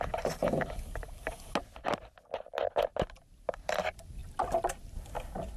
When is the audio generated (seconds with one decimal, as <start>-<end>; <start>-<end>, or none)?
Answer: none